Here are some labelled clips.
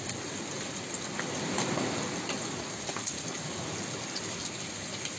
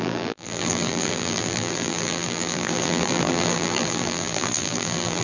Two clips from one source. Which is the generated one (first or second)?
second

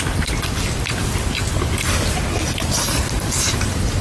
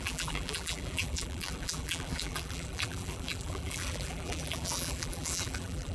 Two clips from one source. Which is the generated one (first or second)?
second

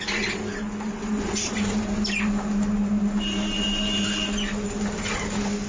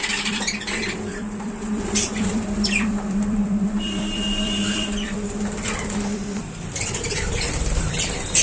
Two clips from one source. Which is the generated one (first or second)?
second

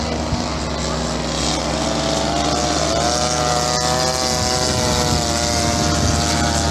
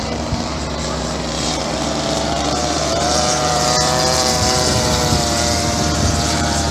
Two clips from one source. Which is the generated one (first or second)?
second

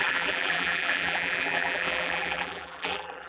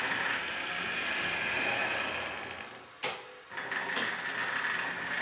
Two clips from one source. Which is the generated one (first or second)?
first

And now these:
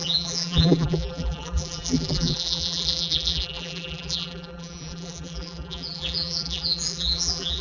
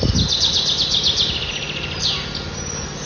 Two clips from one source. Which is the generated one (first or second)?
first